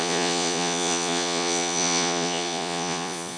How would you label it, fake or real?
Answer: fake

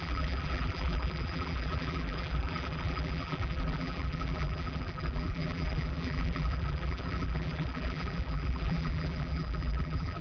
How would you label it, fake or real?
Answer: fake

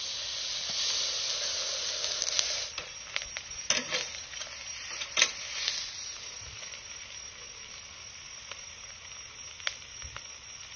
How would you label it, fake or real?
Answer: real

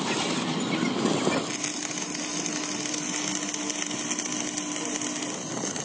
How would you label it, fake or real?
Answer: real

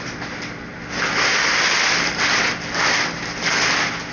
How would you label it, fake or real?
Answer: real